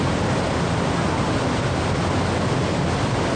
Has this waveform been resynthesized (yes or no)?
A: no